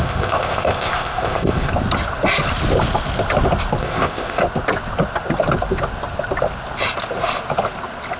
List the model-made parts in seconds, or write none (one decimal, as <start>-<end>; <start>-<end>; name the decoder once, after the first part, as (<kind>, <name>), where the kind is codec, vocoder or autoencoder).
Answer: 0.0-1.7 (codec, ZipCodec); 3.8-4.4